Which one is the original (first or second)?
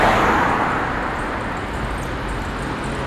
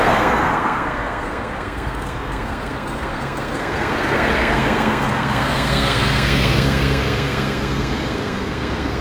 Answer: first